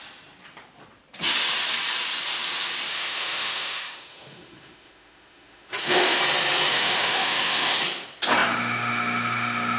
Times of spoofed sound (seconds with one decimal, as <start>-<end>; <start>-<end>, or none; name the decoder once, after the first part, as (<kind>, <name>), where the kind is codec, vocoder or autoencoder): 2.9-6.2 (autoencoder, DAC-VAE); 6.7-7.8